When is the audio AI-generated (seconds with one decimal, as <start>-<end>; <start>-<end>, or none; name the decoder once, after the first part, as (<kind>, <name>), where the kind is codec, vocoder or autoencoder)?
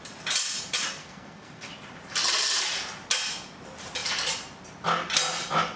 1.0-1.7 (codec, SNAC)